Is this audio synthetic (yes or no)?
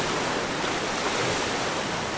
no